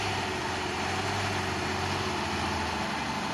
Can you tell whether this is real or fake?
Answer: real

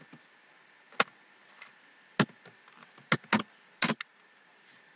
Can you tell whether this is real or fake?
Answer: real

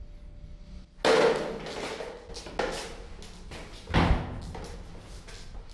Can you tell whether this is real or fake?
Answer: real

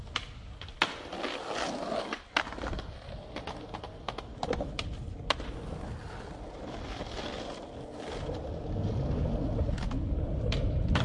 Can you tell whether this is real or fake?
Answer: real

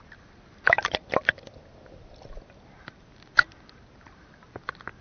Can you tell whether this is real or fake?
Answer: real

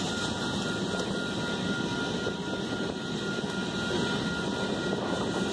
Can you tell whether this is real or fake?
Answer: real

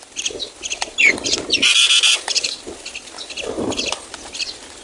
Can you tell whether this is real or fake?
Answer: real